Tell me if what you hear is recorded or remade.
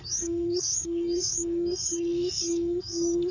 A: remade